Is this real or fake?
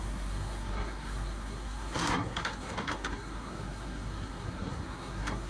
fake